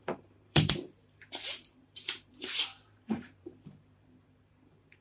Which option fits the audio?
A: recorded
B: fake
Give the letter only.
B